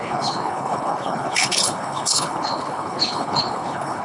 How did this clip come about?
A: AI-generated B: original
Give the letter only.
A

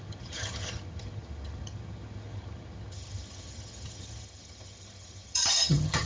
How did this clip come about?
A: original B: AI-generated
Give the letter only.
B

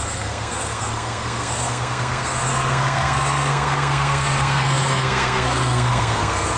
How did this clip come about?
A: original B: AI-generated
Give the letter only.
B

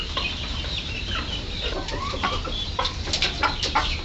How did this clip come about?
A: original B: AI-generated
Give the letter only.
B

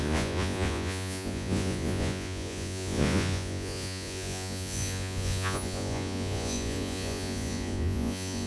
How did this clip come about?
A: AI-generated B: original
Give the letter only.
A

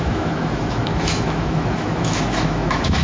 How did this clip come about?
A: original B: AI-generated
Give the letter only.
B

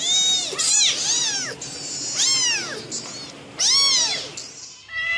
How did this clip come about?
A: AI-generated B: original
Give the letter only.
B